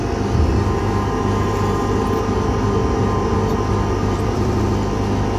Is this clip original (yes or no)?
yes